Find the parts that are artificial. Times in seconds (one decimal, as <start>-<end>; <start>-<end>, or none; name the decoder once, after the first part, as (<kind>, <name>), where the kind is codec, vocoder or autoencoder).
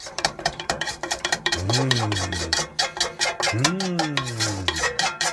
0.0-2.7 (vocoder, BigVGAN v2); 4.8-5.3